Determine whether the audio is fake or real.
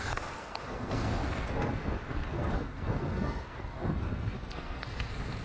fake